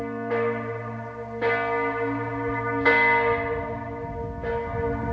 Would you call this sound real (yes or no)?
yes